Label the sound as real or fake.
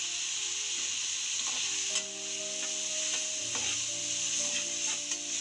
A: real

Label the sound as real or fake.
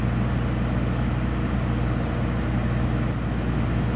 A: real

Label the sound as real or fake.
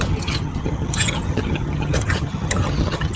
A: fake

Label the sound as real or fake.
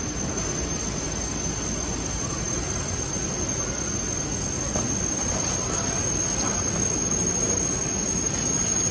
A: real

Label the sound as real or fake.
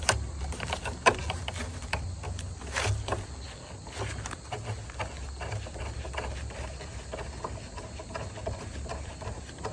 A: real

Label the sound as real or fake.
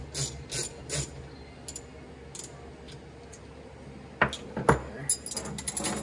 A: real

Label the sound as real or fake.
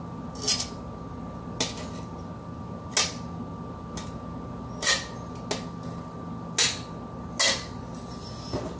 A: real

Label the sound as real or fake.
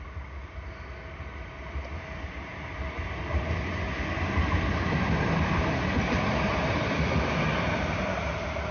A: real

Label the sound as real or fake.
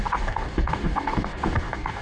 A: fake